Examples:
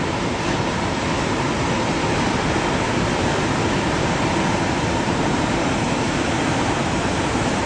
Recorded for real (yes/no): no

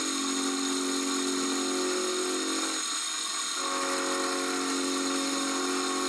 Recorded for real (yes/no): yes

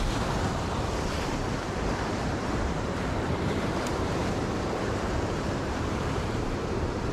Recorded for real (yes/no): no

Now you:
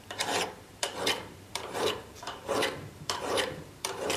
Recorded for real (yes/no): no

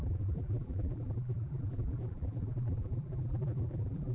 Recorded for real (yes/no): no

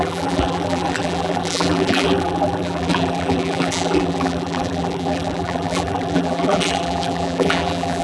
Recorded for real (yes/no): no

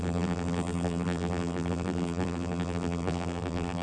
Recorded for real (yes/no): no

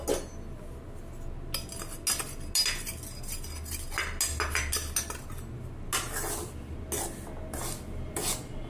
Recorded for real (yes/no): yes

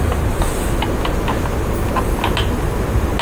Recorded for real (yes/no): yes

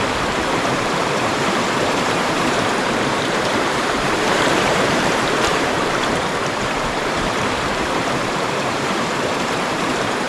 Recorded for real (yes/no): no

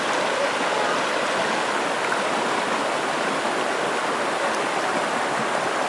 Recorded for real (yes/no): yes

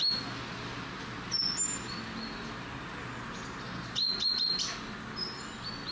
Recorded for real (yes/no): yes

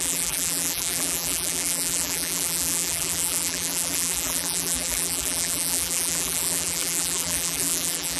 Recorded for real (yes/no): no